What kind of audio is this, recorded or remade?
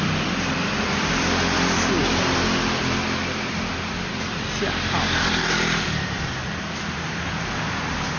recorded